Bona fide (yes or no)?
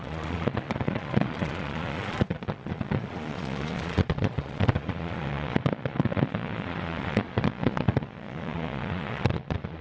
no